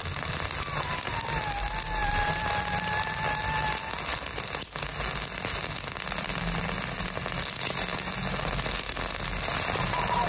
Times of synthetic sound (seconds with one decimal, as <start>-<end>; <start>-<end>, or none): none